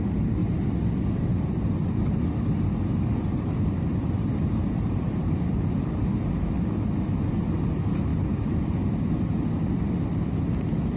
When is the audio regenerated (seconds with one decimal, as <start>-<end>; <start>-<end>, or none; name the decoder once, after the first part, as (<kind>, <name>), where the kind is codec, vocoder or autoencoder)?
3.3-5.6 (vocoder, BigVGAN v2)